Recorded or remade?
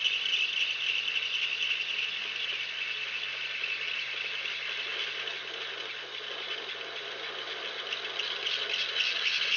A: recorded